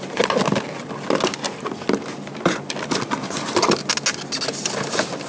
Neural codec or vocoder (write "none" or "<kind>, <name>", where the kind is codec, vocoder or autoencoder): none